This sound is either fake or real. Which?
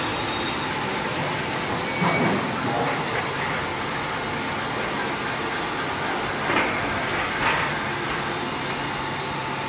real